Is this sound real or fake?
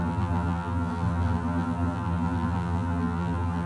fake